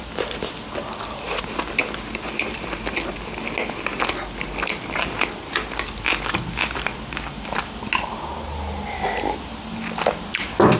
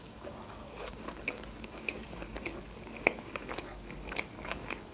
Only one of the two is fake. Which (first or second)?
second